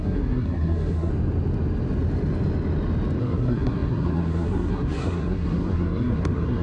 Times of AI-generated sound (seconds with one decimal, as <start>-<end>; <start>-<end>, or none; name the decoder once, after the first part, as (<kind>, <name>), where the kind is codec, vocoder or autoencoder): 0.0-1.1 (codec, SNAC); 3.2-6.6